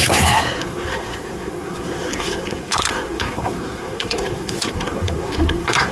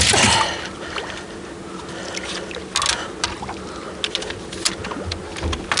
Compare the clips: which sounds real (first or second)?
second